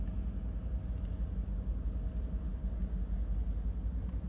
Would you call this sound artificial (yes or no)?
no